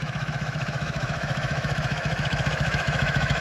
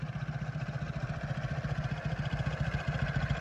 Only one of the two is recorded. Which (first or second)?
second